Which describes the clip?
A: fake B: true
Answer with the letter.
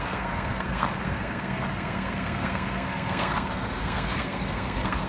A